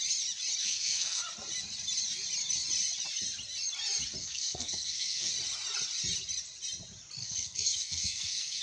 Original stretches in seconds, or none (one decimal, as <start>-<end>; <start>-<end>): 0.0-0.6; 1.2-4.2; 5.3-7.2